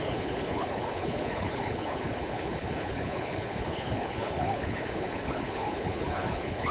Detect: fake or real fake